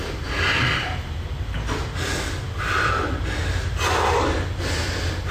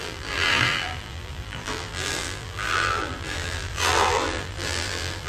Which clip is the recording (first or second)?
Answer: first